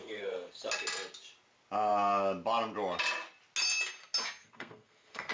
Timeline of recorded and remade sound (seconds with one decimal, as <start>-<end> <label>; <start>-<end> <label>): 0.0-0.7 remade; 0.7-4.4 recorded; 4.4-5.3 remade

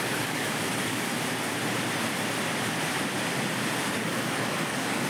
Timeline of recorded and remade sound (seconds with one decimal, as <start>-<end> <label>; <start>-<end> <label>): 0.0-1.1 remade; 1.1-3.8 recorded; 3.8-5.1 remade

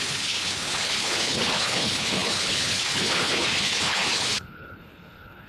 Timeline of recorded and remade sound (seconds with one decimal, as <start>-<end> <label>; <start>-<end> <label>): 0.0-5.5 remade

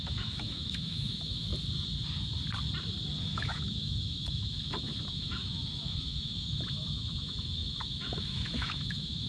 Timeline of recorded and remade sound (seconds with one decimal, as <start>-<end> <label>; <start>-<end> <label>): 0.0-1.5 remade; 1.5-3.2 recorded; 3.2-9.3 remade

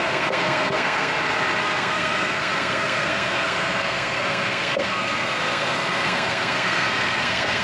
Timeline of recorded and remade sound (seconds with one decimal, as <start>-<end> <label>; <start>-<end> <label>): 0.0-1.1 remade; 1.1-1.6 recorded; 1.6-7.6 remade

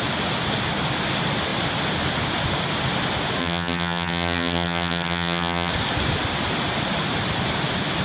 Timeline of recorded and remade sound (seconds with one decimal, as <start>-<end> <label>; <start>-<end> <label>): 0.0-3.4 recorded; 3.4-5.7 remade; 5.7-8.0 recorded

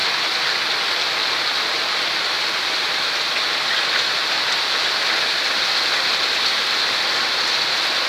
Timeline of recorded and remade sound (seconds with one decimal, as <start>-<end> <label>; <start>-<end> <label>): 0.0-8.1 recorded

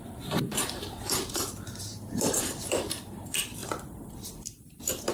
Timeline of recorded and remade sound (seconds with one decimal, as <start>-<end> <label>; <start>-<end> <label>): 0.0-3.6 remade; 3.6-5.1 recorded